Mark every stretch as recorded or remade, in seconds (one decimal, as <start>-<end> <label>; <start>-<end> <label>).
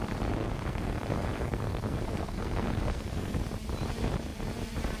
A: 0.0-0.4 recorded; 0.4-3.4 remade; 3.4-5.0 recorded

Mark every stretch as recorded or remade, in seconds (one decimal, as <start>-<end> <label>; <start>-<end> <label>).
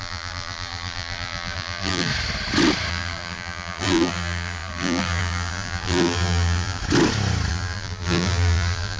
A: 0.0-2.1 remade; 2.1-2.9 recorded; 2.9-6.8 remade; 6.8-7.5 recorded; 7.5-9.0 remade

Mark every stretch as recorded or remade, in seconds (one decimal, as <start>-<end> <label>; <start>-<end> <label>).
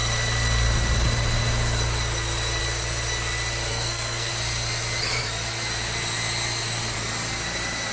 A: 0.0-3.7 recorded; 3.7-4.3 remade; 4.3-7.9 recorded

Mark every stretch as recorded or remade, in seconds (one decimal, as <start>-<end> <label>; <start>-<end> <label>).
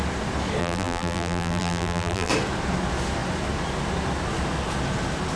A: 0.0-0.6 recorded; 0.6-2.3 remade; 2.3-5.4 recorded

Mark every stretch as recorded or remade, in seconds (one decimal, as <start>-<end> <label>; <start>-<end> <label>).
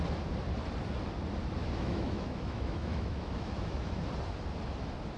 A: 0.0-1.6 recorded; 1.6-4.0 remade; 4.0-5.2 recorded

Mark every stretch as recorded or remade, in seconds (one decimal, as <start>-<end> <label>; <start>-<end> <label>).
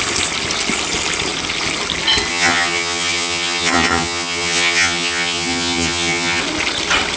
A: 0.0-2.3 recorded; 2.3-6.4 remade; 6.4-7.2 recorded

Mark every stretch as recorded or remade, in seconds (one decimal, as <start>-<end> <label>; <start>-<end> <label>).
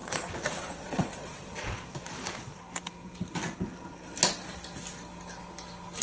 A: 0.0-2.6 remade; 2.6-6.0 recorded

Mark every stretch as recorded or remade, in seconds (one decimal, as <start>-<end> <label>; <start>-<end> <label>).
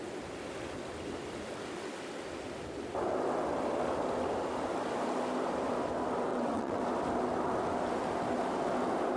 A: 0.0-6.3 recorded; 6.3-6.8 remade; 6.8-9.2 recorded